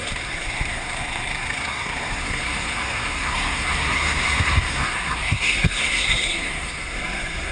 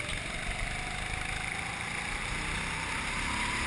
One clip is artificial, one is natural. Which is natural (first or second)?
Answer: second